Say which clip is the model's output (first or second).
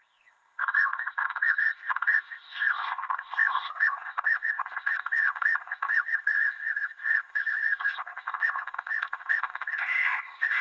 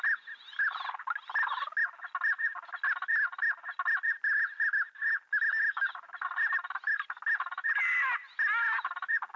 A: first